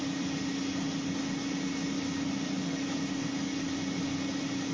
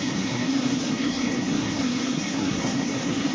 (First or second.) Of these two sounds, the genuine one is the first